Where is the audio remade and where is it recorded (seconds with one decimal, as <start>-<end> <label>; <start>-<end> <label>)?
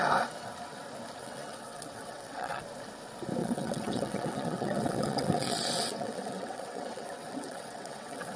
0.0-1.2 recorded; 1.2-2.6 remade; 2.6-3.4 recorded; 3.4-8.4 remade